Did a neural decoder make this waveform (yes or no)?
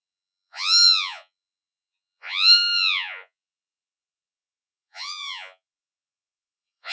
yes